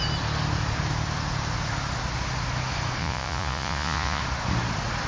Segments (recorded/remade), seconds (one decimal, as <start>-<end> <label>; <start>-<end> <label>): 0.0-3.0 recorded; 3.0-4.2 remade; 4.2-5.1 recorded